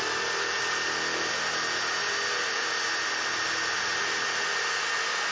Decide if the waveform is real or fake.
real